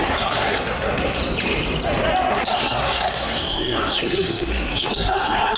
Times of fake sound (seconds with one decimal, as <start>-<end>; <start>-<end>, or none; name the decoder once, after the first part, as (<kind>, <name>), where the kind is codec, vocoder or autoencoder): 0.0-1.2 (codec, SNAC); 2.3-5.6